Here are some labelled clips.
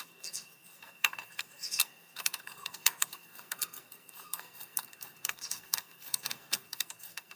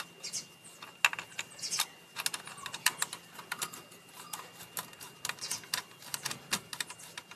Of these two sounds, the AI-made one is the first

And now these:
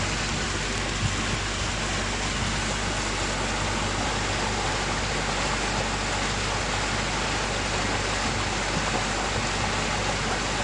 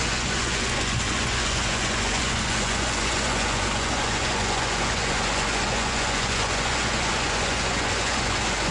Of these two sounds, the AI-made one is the second